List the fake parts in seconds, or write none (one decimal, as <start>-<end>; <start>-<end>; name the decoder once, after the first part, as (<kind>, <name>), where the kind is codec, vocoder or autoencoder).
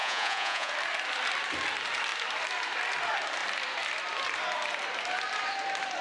0.0-0.7 (vocoder, Vocos)